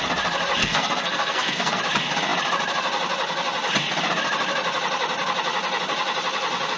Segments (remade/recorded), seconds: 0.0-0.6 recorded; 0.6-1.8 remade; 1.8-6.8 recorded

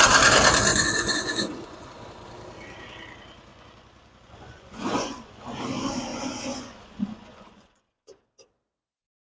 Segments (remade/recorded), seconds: 0.0-0.7 recorded; 0.7-1.9 remade; 1.9-3.5 recorded; 3.5-5.6 remade; 5.6-6.1 recorded; 6.1-8.2 remade; 8.2-9.3 recorded

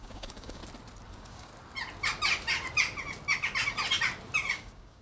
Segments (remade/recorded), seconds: 0.0-0.6 remade; 0.6-1.1 recorded; 1.1-1.5 remade; 1.5-4.5 recorded; 4.5-5.0 remade

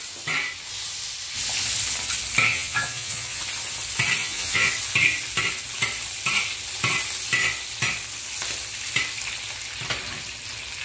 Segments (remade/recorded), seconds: 0.0-2.5 recorded; 2.5-3.4 remade; 3.4-4.2 recorded; 4.2-4.7 remade; 4.7-10.8 recorded

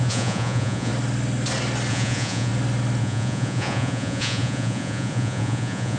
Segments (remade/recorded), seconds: 0.0-0.9 remade; 0.9-1.9 recorded; 1.9-2.5 remade; 2.5-3.0 recorded; 3.0-6.0 remade

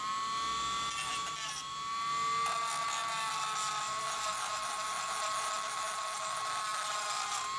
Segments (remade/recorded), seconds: 0.0-7.6 recorded

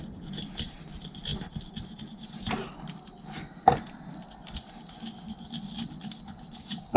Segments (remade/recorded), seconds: 0.0-7.0 recorded